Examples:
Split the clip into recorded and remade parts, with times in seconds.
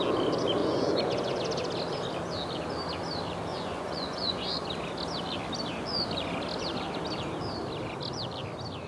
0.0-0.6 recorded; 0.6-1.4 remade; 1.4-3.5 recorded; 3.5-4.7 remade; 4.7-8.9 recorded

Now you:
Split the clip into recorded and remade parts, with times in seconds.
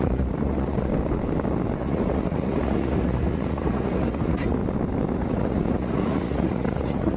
0.0-0.9 remade; 0.9-1.8 recorded; 1.8-4.6 remade; 4.6-5.1 recorded; 5.1-7.2 remade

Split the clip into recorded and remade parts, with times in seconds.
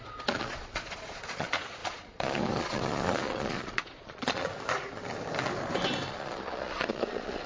0.0-4.5 remade; 4.5-6.1 recorded; 6.1-7.5 remade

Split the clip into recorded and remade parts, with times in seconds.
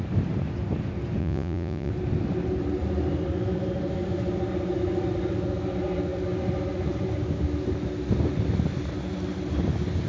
0.0-1.2 recorded; 1.2-1.9 remade; 1.9-10.1 recorded